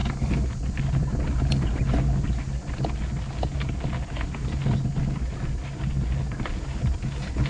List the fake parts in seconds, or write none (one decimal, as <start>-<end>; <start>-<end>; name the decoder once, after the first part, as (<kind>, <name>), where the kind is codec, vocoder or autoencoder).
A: none